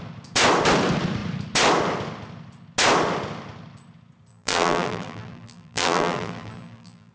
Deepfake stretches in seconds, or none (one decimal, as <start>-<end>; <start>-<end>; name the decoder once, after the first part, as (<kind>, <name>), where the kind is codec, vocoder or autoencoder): 4.3-7.1 (vocoder, BigVGAN v2)